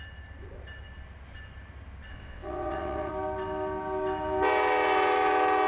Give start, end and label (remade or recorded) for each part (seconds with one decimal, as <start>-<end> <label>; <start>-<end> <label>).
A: 0.0-2.1 recorded; 2.1-3.1 remade; 3.1-5.7 recorded